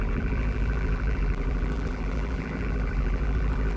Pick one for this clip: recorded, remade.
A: remade